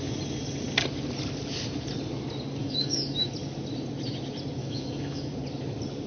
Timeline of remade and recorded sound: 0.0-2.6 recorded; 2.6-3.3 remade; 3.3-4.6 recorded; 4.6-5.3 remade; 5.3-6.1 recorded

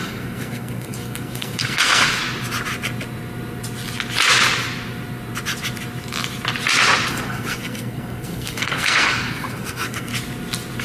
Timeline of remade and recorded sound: 0.0-2.2 remade; 2.2-7.1 recorded; 7.1-10.1 remade; 10.1-10.8 recorded

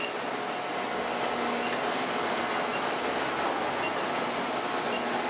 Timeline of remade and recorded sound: 0.0-5.3 recorded